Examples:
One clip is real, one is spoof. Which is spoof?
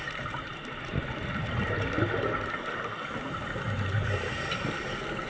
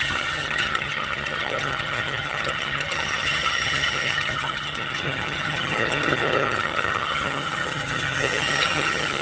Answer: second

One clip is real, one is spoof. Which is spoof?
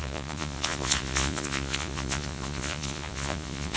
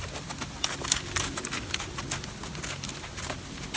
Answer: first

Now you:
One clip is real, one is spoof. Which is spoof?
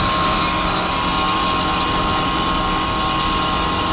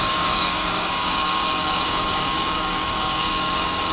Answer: second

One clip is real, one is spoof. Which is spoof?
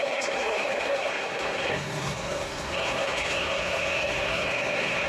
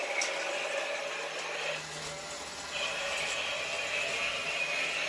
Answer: first